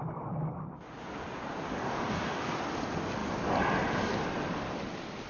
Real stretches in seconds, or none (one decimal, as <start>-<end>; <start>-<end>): 0.0-1.8; 2.4-5.3